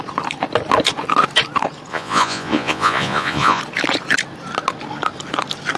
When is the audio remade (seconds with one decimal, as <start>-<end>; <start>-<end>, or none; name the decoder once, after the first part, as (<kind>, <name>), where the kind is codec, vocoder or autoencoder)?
1.9-3.6 (vocoder, Vocos)